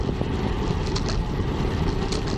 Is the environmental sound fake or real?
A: real